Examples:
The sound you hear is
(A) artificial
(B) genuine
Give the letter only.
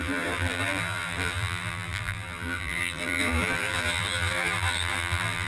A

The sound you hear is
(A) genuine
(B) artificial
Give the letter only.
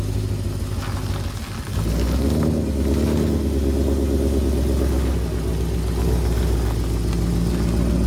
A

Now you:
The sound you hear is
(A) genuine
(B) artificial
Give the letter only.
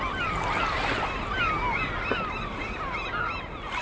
A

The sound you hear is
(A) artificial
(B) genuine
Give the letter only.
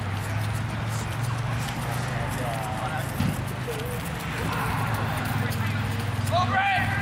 B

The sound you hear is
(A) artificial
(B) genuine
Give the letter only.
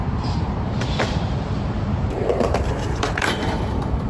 A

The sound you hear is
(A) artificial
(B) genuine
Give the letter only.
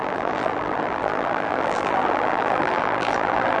A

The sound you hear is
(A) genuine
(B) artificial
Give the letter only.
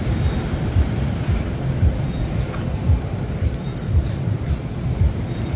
B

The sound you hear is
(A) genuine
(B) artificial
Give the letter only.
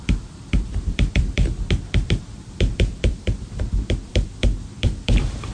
B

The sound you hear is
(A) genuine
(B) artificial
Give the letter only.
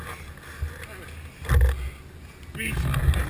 A